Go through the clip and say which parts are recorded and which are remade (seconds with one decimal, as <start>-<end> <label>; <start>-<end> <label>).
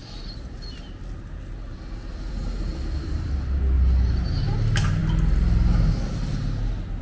0.0-7.0 recorded